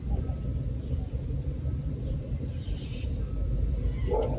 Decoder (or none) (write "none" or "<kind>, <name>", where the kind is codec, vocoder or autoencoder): none